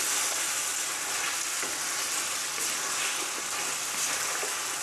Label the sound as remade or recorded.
recorded